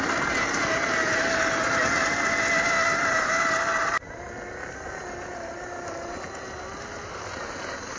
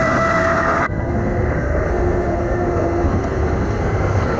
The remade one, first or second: second